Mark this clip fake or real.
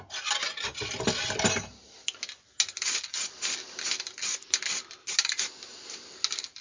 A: real